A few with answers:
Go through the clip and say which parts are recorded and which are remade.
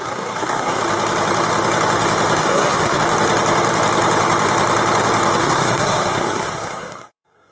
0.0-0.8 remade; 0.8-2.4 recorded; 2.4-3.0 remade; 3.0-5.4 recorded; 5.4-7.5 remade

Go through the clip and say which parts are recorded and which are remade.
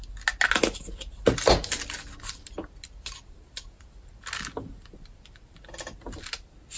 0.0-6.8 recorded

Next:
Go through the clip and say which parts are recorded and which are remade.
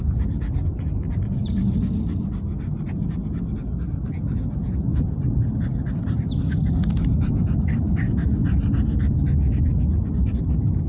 0.0-10.9 recorded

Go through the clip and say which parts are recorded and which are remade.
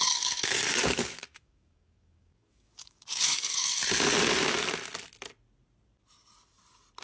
0.0-3.8 remade; 3.8-7.0 recorded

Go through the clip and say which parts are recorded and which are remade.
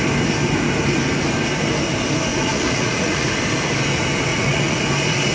0.0-2.3 recorded; 2.3-3.3 remade; 3.3-4.3 recorded; 4.3-4.8 remade; 4.8-5.3 recorded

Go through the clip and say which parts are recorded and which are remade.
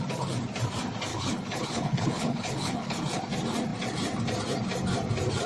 0.0-1.1 recorded; 1.1-3.2 remade; 3.2-5.5 recorded